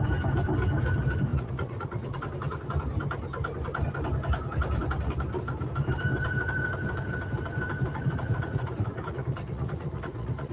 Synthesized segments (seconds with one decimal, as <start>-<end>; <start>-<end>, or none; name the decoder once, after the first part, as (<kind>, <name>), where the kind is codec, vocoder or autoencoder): 1.3-2.2 (vocoder, Vocos); 7.9-10.5